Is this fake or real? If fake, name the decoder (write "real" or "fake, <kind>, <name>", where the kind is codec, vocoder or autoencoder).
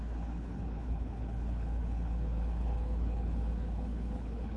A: fake, codec, HILCodec